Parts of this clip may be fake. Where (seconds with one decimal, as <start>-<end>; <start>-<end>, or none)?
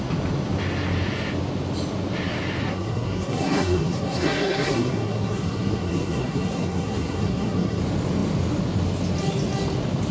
2.6-7.8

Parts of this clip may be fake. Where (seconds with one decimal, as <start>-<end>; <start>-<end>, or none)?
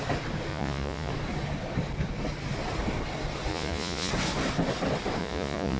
0.5-1.1; 3.5-4.1; 5.2-5.8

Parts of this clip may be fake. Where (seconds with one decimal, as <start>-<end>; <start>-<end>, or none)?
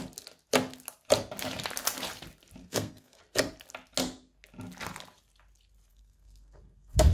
2.6-3.2; 5.9-7.1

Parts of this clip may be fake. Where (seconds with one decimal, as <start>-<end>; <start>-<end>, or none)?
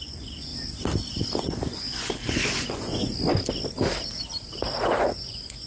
0.0-0.5; 1.4-3.0; 5.0-5.7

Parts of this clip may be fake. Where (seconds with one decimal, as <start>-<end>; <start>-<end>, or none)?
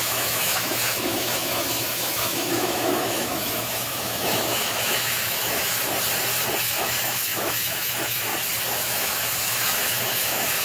0.0-5.7; 6.6-8.3; 8.8-10.6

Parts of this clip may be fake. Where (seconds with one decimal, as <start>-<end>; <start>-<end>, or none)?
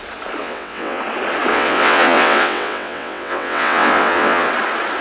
0.4-1.0; 1.5-4.5